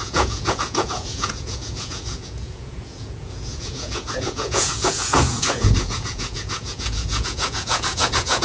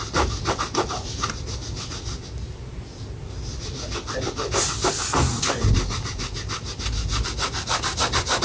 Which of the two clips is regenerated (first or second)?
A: first